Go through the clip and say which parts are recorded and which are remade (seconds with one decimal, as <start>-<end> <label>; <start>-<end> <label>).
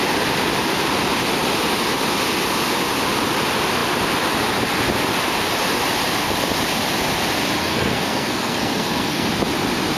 0.0-7.6 recorded; 7.6-9.3 remade; 9.3-10.0 recorded